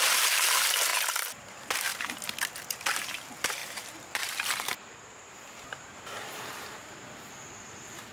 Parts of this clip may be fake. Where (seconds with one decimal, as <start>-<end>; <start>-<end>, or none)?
0.0-0.9; 1.5-1.9; 3.0-8.1